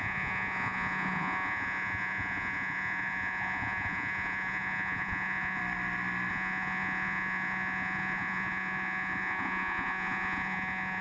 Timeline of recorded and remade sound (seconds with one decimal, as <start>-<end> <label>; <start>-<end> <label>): 0.0-5.6 remade; 5.6-6.3 recorded; 6.3-11.0 remade